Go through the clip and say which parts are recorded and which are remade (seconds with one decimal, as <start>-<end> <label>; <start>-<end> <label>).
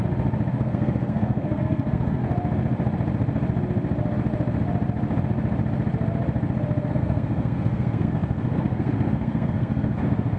0.0-0.5 recorded; 0.5-2.2 remade; 2.2-6.9 recorded; 6.9-10.4 remade